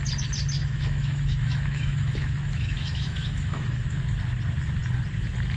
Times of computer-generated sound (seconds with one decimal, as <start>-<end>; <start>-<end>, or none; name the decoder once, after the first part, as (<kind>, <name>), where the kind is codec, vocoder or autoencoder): 0.6-4.0 (autoencoder, DAC-VAE)